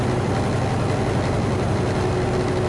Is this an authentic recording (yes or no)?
yes